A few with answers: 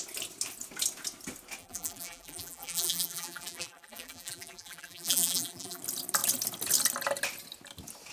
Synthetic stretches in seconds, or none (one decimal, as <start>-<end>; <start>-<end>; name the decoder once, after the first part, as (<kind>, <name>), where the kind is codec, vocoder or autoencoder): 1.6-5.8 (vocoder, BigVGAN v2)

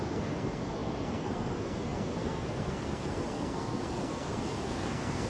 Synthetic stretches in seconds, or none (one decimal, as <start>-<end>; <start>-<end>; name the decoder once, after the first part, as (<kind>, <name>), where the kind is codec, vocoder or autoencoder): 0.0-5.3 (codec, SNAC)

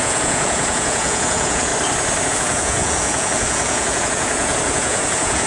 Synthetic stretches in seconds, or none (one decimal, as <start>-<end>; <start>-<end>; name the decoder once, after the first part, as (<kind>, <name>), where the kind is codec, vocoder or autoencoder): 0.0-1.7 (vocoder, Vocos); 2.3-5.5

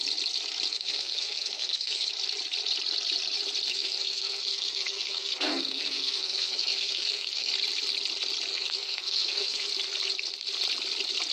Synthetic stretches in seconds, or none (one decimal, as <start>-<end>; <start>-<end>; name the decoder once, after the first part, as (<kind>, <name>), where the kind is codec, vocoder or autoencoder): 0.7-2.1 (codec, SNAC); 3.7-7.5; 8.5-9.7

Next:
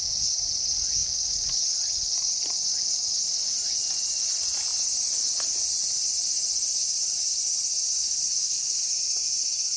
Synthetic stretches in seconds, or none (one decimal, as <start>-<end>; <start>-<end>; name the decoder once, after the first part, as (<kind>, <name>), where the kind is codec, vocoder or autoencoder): 8.0-8.8 (codec, HILCodec)

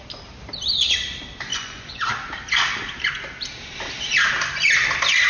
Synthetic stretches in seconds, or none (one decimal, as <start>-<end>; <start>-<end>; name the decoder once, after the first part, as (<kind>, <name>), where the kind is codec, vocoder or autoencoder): 1.5-2.1 (vocoder, Vocos)

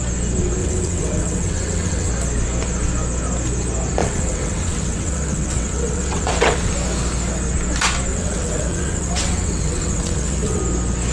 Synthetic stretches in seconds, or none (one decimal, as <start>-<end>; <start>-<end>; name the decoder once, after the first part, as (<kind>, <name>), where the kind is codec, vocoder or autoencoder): 0.6-2.1 (vocoder, WaveNeXt); 4.0-6.7; 8.1-10.6